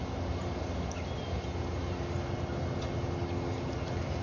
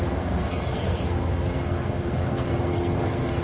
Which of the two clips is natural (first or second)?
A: first